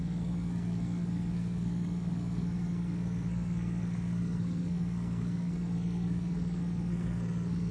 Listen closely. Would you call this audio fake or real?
fake